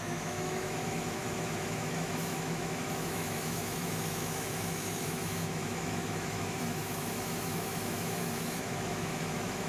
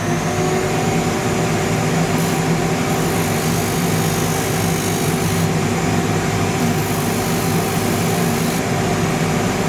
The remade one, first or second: first